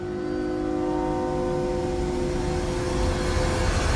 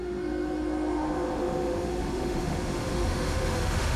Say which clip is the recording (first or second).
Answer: first